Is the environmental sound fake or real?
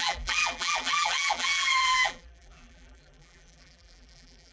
fake